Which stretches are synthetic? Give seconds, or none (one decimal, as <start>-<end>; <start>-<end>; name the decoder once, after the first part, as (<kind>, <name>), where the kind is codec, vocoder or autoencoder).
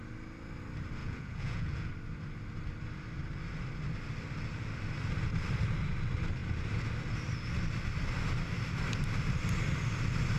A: 1.0-1.9 (vocoder, Vocos)